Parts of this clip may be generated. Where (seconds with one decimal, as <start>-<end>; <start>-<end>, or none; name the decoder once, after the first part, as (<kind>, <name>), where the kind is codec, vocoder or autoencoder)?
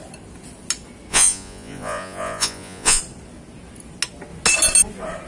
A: 1.1-3.0 (vocoder, Vocos)